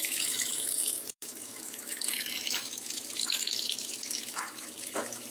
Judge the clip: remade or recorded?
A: remade